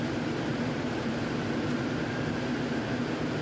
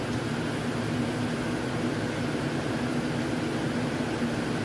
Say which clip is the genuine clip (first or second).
second